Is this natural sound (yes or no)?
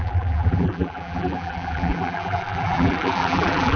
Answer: no